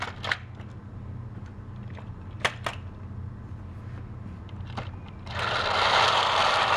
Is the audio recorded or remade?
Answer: recorded